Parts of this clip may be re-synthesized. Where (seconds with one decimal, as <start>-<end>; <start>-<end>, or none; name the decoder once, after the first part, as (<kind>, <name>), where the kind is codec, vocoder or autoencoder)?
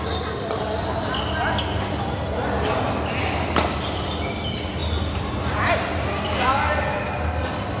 none